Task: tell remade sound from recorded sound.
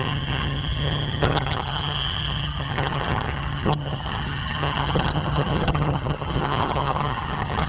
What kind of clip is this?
remade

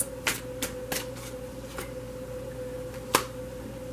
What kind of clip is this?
recorded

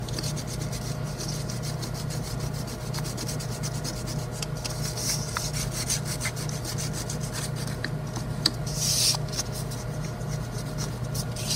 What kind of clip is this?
recorded